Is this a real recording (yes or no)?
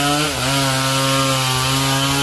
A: yes